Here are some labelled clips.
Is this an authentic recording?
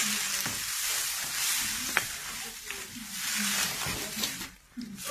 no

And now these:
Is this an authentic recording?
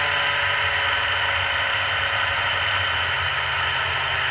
yes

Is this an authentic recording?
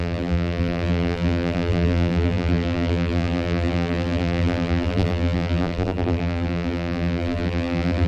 no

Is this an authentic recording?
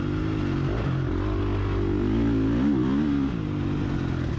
yes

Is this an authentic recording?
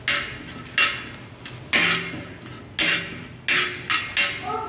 yes